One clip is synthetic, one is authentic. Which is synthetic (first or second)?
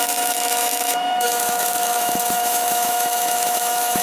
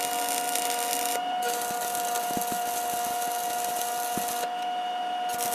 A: first